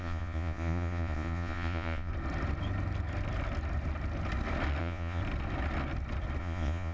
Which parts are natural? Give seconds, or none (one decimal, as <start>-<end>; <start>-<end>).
2.1-4.8; 5.2-6.4